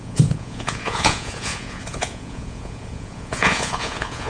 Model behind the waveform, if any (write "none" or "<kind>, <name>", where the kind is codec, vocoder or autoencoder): vocoder, Vocos